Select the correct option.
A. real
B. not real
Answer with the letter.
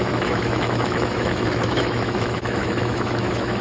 B